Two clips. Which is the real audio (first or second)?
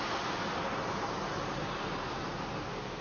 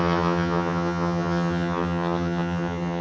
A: first